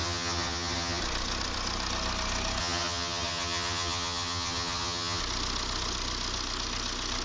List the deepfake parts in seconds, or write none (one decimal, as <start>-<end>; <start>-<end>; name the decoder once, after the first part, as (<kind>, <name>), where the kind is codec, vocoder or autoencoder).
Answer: 0.0-1.0 (vocoder, HiFi-GAN); 2.6-5.2